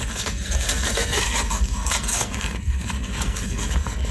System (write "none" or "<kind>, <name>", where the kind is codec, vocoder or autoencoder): codec, SNAC